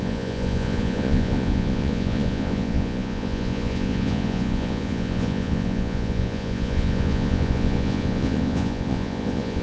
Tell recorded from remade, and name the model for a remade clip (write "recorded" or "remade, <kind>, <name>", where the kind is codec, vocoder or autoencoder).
remade, vocoder, Vocos